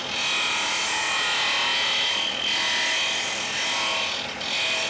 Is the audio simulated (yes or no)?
no